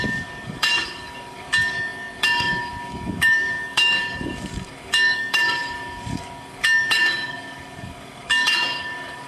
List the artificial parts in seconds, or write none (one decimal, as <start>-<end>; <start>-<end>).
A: 0.0-9.3